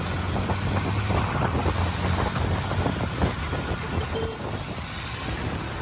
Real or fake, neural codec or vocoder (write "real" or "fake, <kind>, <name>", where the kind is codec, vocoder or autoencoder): real